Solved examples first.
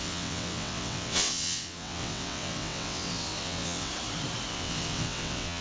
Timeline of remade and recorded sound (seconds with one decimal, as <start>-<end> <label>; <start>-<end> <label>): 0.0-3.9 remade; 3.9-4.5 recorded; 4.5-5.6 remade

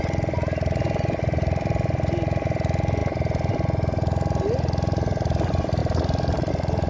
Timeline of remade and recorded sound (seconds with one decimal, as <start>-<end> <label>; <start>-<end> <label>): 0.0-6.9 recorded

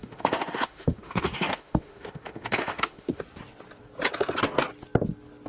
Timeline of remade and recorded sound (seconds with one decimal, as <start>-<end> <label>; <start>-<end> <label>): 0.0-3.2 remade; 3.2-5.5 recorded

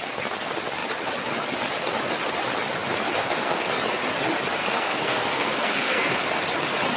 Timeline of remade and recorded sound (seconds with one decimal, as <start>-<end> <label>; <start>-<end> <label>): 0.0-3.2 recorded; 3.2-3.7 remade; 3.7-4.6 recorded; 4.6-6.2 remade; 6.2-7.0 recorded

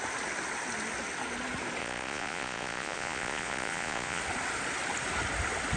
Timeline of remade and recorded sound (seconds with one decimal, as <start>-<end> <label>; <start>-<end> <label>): 0.0-1.8 recorded; 1.8-4.2 remade; 4.2-5.8 recorded

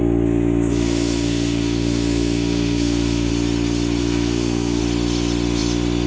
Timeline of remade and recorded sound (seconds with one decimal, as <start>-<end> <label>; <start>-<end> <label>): 0.0-0.7 recorded; 0.7-3.3 remade; 3.3-4.0 recorded; 4.0-4.8 remade; 4.8-6.1 recorded

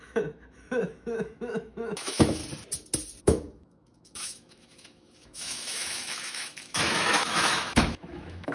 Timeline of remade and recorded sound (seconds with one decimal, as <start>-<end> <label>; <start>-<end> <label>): 0.0-2.4 remade; 2.4-3.2 recorded; 3.2-8.5 remade

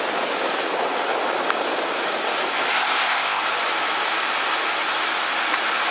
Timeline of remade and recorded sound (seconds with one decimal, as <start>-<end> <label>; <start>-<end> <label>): 0.0-2.7 recorded; 2.7-3.4 remade; 3.4-5.9 recorded